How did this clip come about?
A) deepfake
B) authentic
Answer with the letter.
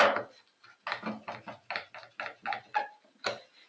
B